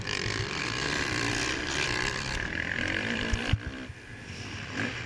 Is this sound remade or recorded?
remade